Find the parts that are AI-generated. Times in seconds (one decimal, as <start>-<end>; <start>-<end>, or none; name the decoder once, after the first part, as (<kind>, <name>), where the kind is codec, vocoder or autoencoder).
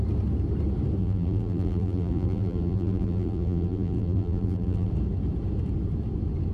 1.0-4.9 (vocoder, BigVGAN v2)